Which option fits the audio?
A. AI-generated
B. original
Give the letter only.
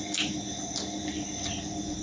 B